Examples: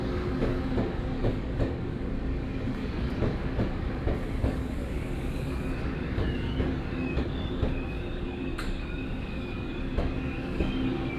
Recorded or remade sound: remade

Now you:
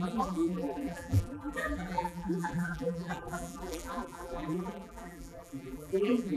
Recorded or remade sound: remade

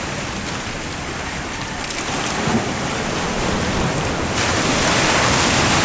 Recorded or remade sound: recorded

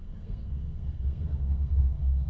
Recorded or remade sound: remade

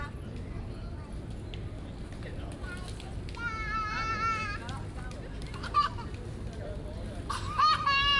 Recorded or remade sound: recorded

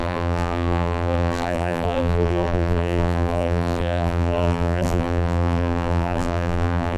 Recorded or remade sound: remade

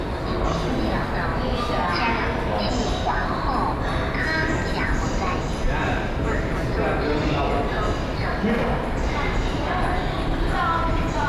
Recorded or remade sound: recorded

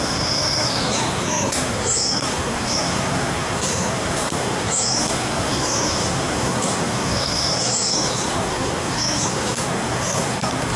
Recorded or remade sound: remade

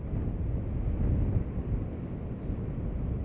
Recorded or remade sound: recorded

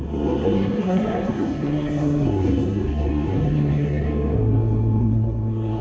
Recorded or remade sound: remade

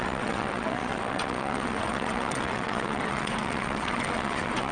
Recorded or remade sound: remade